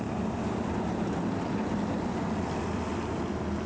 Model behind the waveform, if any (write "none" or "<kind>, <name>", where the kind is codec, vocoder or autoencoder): none